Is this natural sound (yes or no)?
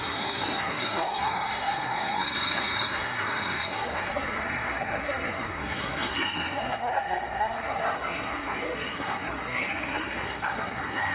no